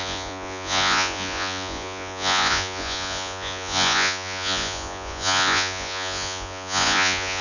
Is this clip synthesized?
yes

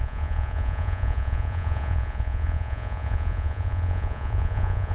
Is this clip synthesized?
yes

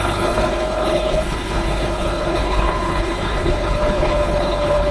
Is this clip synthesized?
yes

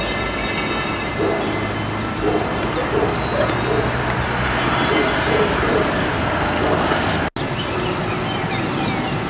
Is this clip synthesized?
no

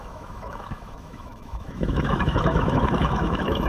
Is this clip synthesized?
yes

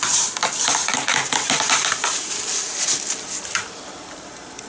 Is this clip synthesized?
no